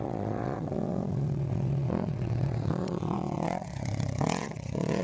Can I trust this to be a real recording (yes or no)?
no